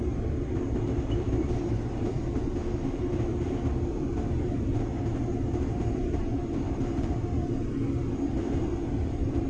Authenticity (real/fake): fake